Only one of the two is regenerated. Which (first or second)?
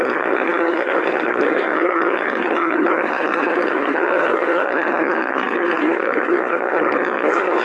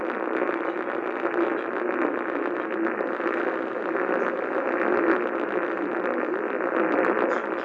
first